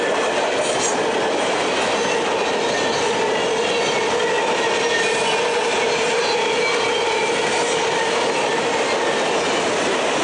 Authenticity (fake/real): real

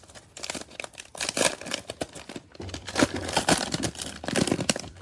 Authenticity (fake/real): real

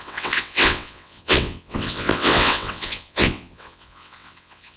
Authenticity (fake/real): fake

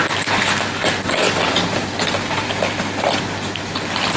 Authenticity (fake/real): real